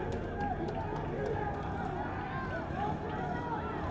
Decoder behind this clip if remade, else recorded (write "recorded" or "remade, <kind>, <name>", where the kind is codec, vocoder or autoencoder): recorded